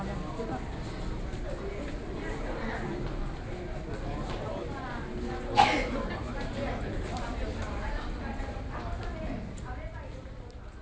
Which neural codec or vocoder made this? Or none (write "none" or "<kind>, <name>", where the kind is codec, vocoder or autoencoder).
none